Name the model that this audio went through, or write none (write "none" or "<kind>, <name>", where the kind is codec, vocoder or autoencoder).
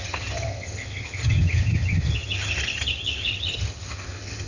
vocoder, HiFi-GAN